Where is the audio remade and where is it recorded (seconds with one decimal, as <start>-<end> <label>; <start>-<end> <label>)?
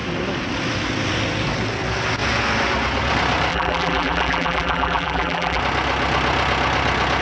0.0-3.5 recorded; 3.5-5.6 remade; 5.6-7.2 recorded